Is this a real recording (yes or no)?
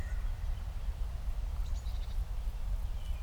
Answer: yes